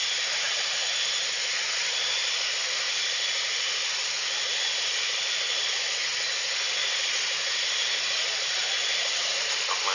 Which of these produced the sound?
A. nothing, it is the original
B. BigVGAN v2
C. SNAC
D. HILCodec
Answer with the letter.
A